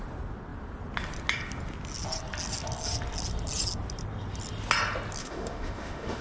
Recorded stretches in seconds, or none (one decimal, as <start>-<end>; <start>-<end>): 0.0-5.2